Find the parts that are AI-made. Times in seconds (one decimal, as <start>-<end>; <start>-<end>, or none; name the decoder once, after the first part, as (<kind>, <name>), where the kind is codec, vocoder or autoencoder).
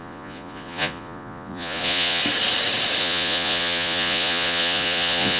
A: 0.0-2.2 (vocoder, Vocos); 3.0-5.4